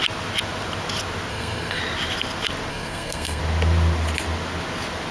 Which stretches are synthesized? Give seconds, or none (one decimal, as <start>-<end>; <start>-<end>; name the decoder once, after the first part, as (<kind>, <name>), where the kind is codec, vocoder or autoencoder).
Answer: 1.3-1.8 (codec, SNAC); 2.7-3.4